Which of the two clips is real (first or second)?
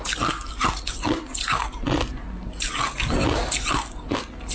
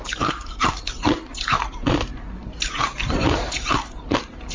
first